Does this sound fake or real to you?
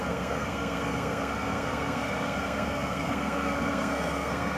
fake